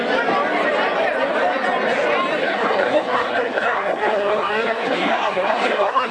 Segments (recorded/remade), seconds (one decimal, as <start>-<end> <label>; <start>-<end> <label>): 0.0-2.4 recorded; 2.4-6.1 remade